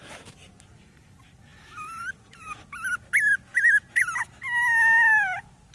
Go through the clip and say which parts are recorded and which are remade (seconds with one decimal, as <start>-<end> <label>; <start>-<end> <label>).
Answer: 0.0-3.5 recorded; 3.5-4.4 remade; 4.4-5.7 recorded